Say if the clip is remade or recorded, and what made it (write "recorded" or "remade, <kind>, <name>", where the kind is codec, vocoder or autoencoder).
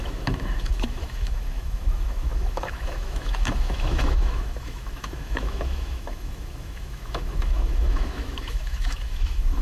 remade, autoencoder, DAC-VAE